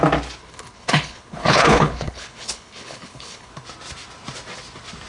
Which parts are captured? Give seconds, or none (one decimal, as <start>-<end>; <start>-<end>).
0.0-0.4; 3.5-5.1